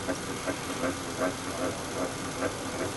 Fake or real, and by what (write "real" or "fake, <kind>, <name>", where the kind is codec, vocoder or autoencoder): real